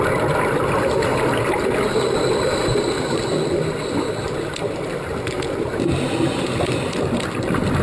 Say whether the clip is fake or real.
real